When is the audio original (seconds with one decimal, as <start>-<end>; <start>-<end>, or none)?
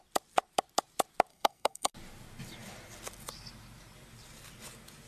0.0-1.3; 1.9-5.1